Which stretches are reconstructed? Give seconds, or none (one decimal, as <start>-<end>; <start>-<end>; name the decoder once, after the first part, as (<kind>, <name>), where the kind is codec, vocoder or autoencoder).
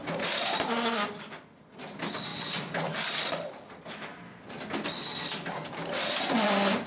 none